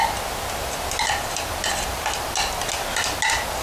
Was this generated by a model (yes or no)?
no